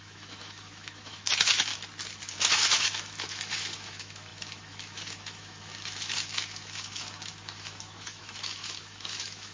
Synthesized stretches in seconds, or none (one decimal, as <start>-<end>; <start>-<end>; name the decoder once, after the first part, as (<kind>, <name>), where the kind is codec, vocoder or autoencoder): 0.0-1.7 (autoencoder, DAC-VAE); 2.4-9.5